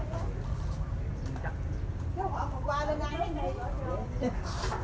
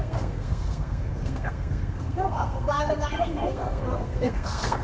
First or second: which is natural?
first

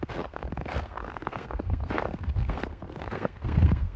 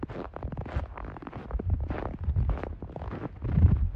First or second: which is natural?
second